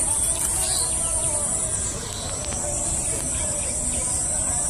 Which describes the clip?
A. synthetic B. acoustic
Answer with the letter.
B